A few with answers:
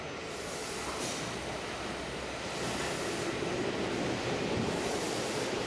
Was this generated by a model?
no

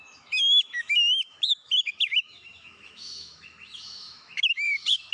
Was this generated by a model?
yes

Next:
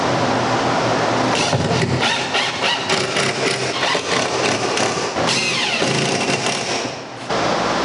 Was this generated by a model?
no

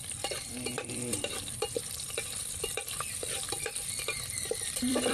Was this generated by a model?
yes